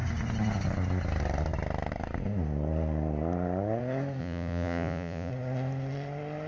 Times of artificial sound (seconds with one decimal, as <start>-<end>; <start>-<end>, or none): 4.2-5.3